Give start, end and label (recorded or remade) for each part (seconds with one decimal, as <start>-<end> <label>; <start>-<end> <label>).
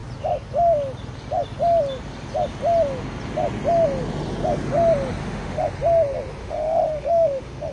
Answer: 0.0-5.2 recorded; 5.2-5.7 remade; 5.7-6.4 recorded; 6.4-7.7 remade